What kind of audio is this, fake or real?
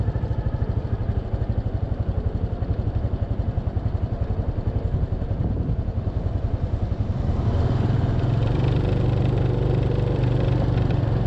real